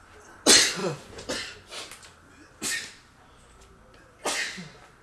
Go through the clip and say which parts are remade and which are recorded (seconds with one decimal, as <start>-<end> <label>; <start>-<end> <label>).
0.0-0.8 recorded; 0.8-1.8 remade; 1.8-5.0 recorded